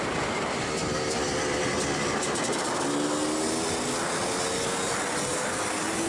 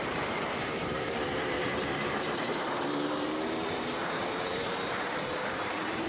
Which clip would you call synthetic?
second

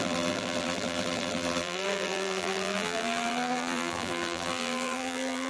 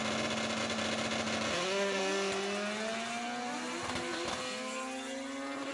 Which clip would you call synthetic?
first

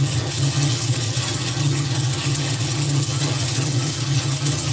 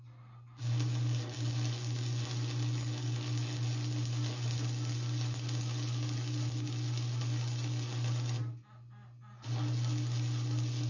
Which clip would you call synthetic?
first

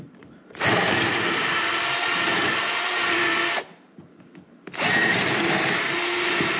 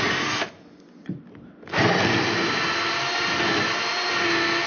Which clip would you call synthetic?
first